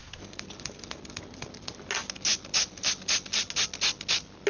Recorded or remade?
recorded